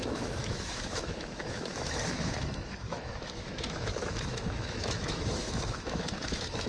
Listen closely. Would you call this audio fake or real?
fake